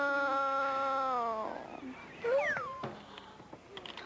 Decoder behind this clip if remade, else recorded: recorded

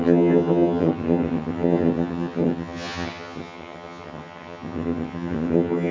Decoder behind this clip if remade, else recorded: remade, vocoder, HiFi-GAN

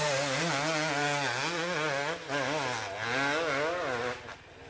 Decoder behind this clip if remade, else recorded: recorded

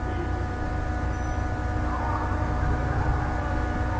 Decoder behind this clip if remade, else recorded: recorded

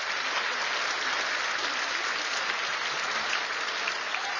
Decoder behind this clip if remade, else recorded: recorded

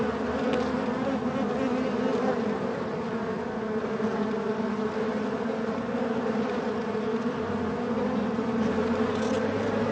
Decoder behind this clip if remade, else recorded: recorded